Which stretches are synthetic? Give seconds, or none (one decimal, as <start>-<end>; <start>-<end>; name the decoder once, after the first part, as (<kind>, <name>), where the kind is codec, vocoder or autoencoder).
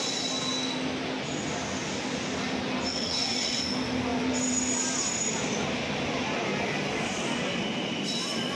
2.9-3.6 (vocoder, WaveNeXt)